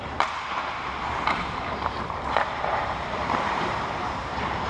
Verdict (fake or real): fake